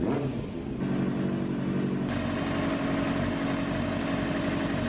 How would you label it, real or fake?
real